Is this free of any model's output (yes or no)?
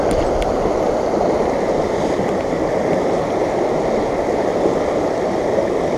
yes